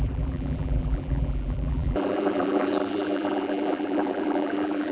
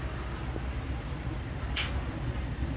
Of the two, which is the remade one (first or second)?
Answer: first